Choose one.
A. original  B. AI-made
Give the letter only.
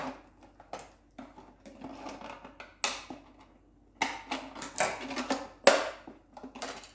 A